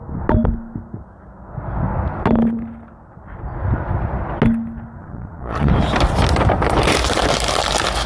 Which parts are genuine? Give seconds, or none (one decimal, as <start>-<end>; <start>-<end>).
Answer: 0.0-5.0; 5.7-8.1